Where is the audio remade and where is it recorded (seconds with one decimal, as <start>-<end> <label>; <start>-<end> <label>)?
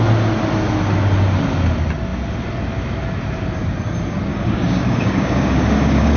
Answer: 0.0-4.3 recorded; 4.3-6.2 remade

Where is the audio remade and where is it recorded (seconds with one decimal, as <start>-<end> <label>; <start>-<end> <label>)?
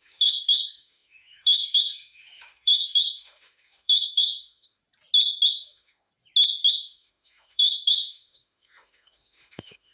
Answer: 0.0-4.8 remade; 4.8-5.5 recorded; 5.5-6.1 remade; 6.1-6.7 recorded; 6.7-9.9 remade